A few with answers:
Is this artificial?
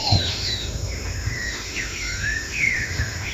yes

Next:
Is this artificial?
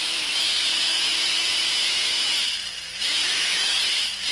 yes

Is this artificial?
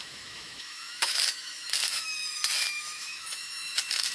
yes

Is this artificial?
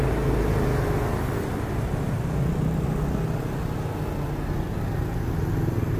no